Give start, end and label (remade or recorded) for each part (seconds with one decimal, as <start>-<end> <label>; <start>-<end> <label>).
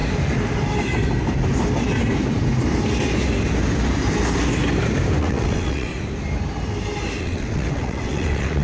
0.0-5.2 recorded; 5.2-5.9 remade; 5.9-7.2 recorded; 7.2-8.6 remade